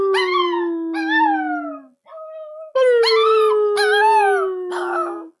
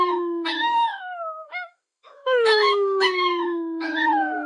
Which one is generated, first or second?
second